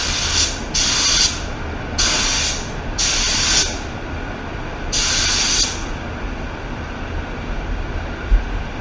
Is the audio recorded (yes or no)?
yes